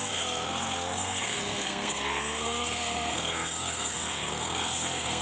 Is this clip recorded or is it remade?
remade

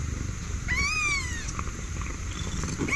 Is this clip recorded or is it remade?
recorded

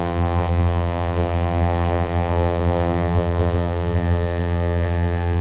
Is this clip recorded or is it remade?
remade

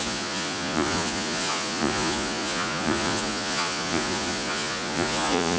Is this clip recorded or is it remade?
remade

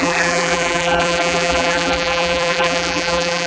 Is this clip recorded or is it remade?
remade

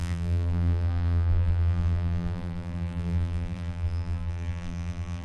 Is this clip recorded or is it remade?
remade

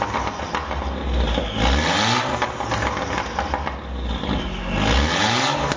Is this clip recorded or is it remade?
recorded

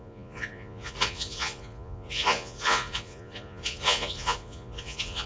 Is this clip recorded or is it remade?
remade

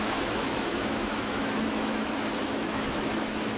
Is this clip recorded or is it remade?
remade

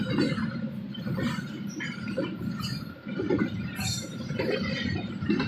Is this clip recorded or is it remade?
remade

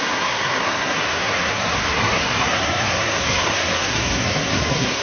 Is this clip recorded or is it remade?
remade